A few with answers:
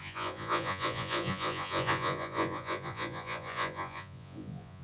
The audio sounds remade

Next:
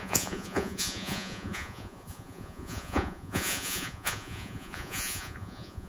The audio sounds remade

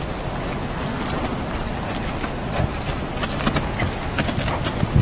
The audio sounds recorded